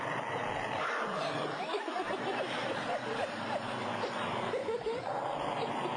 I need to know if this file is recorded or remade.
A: recorded